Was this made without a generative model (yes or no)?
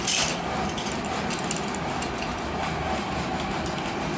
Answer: yes